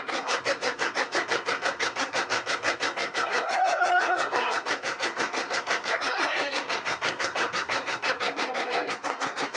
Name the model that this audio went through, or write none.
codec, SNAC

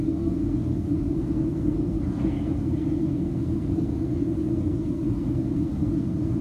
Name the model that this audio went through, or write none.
codec, SNAC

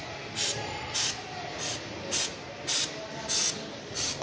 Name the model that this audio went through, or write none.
none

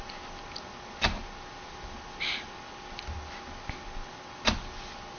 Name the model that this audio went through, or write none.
none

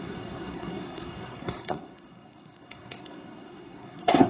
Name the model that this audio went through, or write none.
codec, SNAC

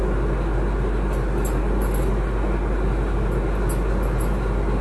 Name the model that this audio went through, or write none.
none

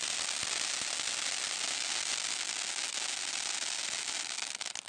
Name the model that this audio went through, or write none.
none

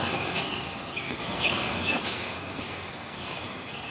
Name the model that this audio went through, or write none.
codec, SNAC